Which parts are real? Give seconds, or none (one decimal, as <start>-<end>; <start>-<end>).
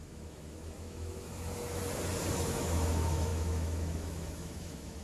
1.8-2.4